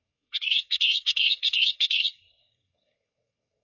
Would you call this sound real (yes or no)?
no